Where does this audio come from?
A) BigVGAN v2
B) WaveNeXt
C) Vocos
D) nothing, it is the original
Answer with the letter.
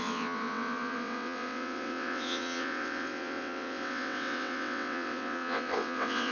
B